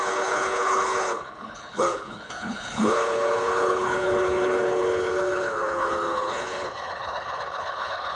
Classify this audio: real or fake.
fake